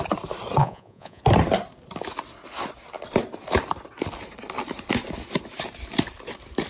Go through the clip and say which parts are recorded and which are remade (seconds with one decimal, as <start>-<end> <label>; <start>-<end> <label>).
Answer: 0.0-0.6 recorded; 0.6-1.2 remade; 1.2-6.7 recorded